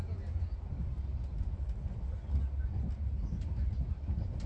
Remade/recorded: recorded